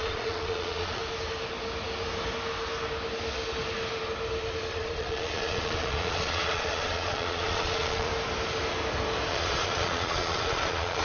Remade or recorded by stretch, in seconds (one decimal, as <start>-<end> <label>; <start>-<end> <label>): 0.0-1.0 remade; 1.0-4.7 recorded; 4.7-8.1 remade; 8.1-9.3 recorded; 9.3-11.0 remade